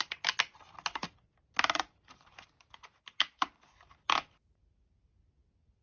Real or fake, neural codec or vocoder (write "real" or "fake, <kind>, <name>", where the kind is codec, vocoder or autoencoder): real